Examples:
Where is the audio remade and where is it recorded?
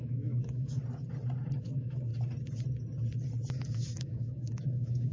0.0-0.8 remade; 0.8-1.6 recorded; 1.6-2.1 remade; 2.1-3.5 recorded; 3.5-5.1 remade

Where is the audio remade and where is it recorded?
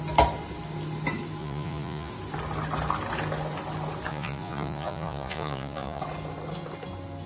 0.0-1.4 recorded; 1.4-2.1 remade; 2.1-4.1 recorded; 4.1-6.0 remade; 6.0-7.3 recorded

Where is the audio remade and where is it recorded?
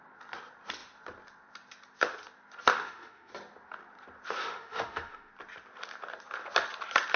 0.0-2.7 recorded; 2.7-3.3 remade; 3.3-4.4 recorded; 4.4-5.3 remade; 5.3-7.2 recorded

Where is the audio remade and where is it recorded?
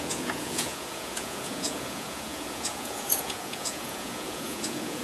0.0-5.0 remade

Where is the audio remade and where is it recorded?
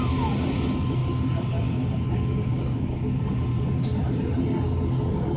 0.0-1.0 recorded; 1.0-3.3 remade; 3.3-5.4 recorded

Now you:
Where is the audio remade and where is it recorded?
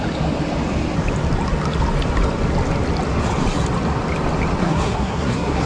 0.0-4.6 recorded; 4.6-5.7 remade